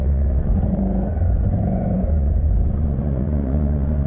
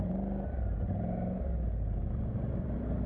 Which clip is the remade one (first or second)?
first